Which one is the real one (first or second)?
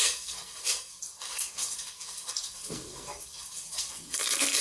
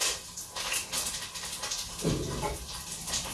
second